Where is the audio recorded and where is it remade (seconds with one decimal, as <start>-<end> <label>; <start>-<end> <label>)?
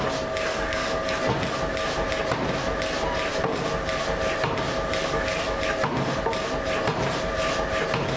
0.0-0.5 recorded; 0.5-1.2 remade; 1.2-5.0 recorded; 5.0-5.6 remade; 5.6-8.2 recorded